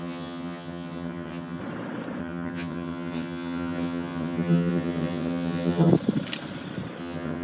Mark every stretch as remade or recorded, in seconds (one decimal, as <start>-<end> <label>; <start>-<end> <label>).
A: 0.0-1.6 remade; 1.6-2.2 recorded; 2.2-5.9 remade; 5.9-7.0 recorded; 7.0-7.4 remade